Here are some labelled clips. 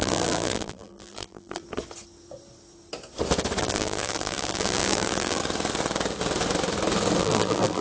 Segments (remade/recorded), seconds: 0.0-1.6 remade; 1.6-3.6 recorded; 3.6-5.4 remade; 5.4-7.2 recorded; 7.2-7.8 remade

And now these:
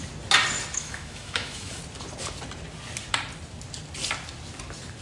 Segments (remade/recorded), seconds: 0.0-0.7 recorded; 0.7-1.8 remade; 1.8-5.0 recorded

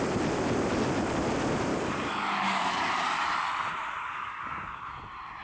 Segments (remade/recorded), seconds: 0.0-1.7 recorded; 1.7-2.9 remade; 2.9-4.0 recorded; 4.0-4.8 remade; 4.8-5.4 recorded

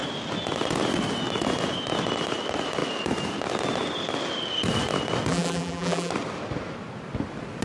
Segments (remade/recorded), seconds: 0.0-5.3 recorded; 5.3-6.1 remade; 6.1-7.6 recorded

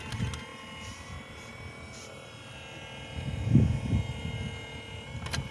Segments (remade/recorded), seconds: 0.0-5.5 recorded

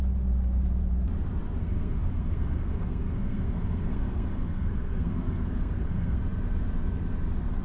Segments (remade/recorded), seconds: 0.0-1.6 recorded; 1.6-6.2 remade; 6.2-7.6 recorded

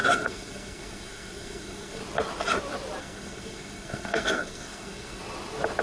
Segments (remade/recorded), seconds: 0.0-2.0 remade; 2.0-3.0 recorded; 3.0-5.2 remade; 5.2-5.8 recorded